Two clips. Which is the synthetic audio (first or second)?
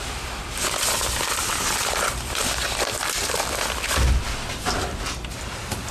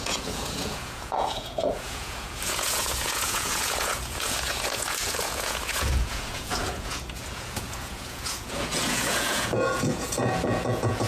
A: second